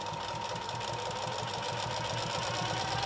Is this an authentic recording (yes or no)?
yes